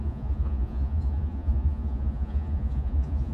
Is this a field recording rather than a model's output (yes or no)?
no